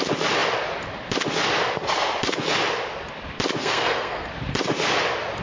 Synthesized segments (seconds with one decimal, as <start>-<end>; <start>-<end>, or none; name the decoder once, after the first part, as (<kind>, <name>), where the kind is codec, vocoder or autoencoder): 3.6-4.3 (codec, SNAC)